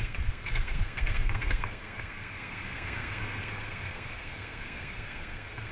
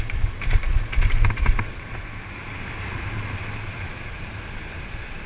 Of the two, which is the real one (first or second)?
second